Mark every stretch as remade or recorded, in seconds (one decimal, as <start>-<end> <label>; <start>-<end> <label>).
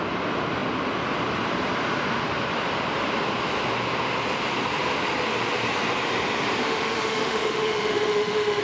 0.0-6.6 recorded; 6.6-8.6 remade